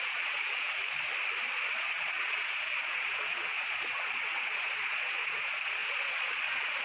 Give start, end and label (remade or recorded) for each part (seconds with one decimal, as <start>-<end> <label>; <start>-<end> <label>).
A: 0.0-0.8 remade; 0.8-1.7 recorded; 1.7-6.8 remade